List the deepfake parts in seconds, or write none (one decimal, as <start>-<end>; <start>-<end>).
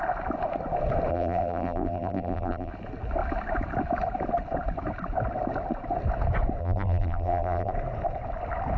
1.1-2.7; 6.6-7.7